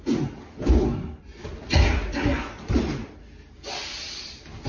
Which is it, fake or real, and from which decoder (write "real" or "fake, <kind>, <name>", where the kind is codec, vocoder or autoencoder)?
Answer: real